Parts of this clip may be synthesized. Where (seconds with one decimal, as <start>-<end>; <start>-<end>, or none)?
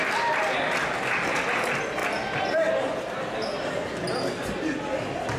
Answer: none